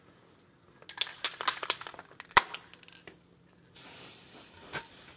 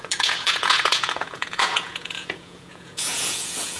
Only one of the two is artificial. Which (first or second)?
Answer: second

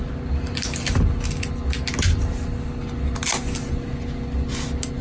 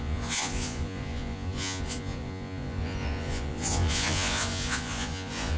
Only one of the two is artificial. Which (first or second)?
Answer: second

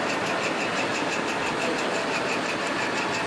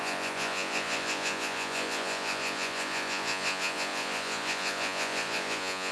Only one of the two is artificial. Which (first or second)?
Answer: second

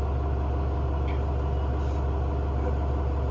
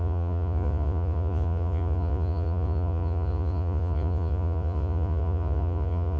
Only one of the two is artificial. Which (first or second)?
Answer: second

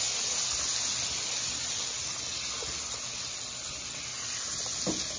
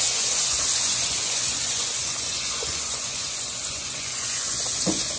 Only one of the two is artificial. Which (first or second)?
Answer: second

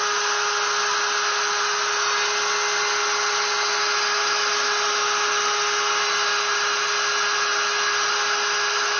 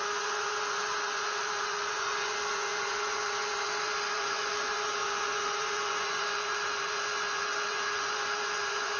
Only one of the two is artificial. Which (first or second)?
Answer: second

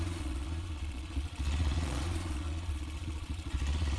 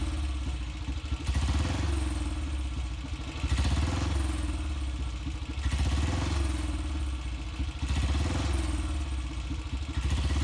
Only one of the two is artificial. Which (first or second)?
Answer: first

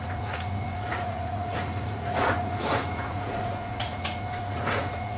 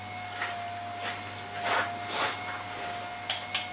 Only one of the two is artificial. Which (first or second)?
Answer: first